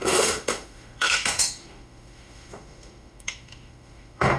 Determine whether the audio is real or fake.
fake